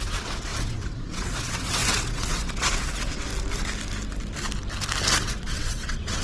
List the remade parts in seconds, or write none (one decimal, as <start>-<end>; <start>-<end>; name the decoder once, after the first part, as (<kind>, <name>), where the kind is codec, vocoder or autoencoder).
0.0-3.3 (vocoder, WaveNeXt); 5.2-6.2